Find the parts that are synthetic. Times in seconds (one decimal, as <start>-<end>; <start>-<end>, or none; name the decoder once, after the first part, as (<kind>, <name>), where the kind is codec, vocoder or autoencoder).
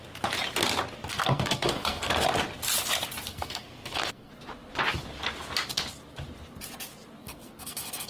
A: 1.1-2.1 (codec, SNAC); 3.3-4.3; 7.2-8.1